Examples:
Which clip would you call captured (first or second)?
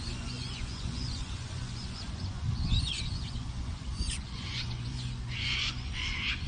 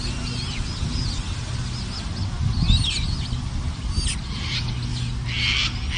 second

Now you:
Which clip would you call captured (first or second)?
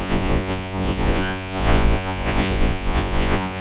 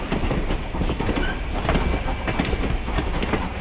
second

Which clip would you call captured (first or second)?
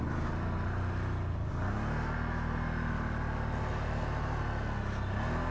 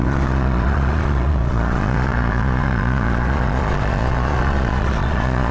first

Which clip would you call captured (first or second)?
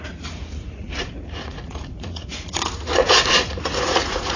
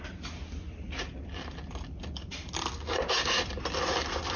second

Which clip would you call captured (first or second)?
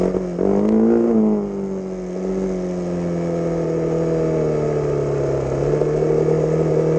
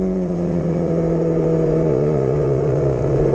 first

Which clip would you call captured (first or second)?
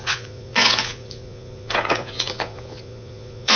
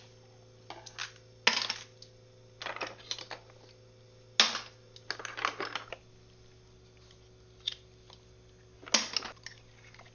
second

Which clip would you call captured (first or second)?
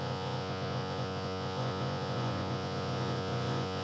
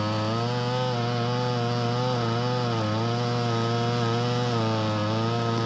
second